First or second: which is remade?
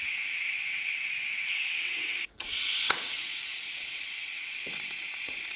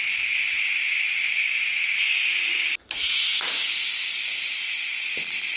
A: first